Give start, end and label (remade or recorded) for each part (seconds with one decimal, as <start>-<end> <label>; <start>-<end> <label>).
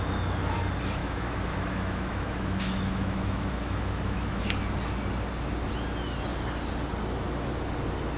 0.0-1.0 recorded; 1.0-4.4 remade; 4.4-8.2 recorded